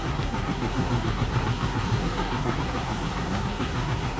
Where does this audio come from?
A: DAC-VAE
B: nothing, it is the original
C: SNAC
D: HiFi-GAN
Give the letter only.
C